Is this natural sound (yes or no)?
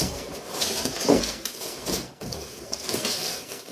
no